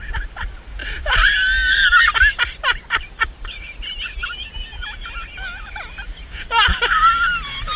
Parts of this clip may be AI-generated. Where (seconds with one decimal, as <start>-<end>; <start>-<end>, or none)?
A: none